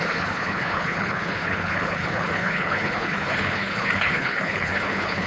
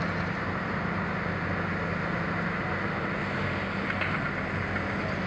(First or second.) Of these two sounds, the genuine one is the second